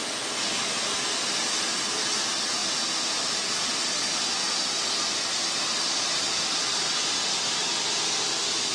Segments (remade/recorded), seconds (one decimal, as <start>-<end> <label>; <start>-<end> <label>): 0.0-8.7 recorded